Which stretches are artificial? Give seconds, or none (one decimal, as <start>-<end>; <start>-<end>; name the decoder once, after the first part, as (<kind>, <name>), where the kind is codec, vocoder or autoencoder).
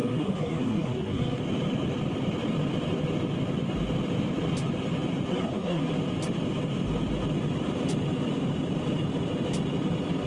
0.0-1.4 (codec, SNAC); 5.3-5.9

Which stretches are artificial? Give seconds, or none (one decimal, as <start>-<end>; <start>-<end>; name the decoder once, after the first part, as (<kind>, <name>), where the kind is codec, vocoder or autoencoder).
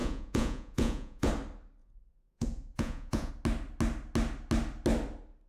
0.0-1.3 (vocoder, Vocos); 1.8-3.3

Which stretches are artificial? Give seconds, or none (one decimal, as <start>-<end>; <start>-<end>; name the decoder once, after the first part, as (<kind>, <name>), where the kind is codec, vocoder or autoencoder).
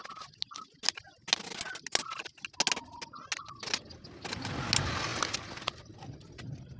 none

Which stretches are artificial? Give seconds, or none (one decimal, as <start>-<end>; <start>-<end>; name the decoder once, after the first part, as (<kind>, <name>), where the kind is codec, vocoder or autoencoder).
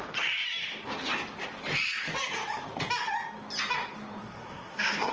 4.2-5.1 (codec, SNAC)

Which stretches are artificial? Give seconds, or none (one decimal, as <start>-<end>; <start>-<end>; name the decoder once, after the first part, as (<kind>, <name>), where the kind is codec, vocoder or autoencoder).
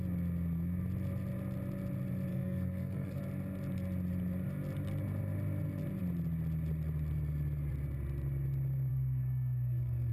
2.3-3.2 (codec, SNAC); 8.9-10.1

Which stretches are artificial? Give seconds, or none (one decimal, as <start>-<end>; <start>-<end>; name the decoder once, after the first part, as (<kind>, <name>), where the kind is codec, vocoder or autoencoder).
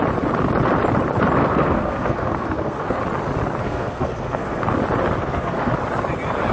1.4-3.0 (codec, SNAC); 3.6-4.6; 5.2-5.7